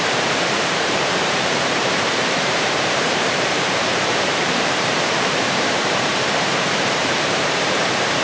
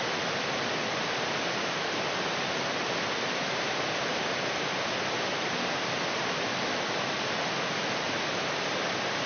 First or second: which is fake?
first